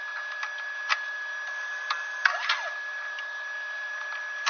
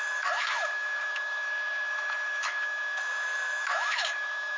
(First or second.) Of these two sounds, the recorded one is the first